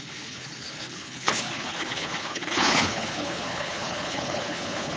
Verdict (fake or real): fake